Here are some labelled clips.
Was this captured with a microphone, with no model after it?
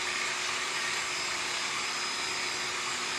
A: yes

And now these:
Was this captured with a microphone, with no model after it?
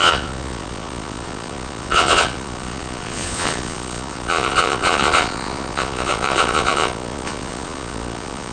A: no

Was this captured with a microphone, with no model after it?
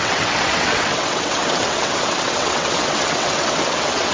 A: no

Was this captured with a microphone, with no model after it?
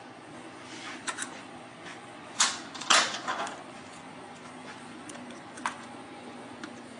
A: no